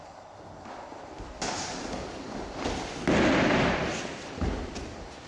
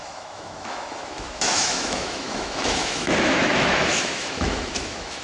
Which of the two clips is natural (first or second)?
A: first